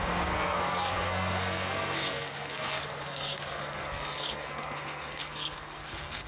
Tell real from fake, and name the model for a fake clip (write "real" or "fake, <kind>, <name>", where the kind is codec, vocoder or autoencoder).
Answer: fake, codec, SNAC